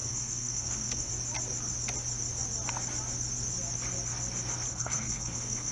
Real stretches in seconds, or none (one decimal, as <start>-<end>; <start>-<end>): 1.1-4.7